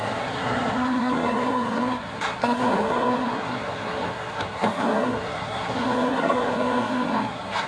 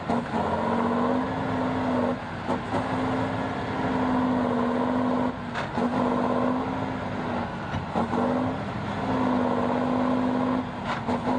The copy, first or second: first